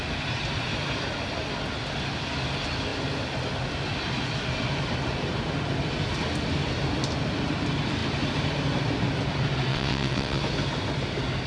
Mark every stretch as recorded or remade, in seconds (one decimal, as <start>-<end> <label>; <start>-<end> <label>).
0.0-9.7 recorded; 9.7-10.4 remade; 10.4-11.5 recorded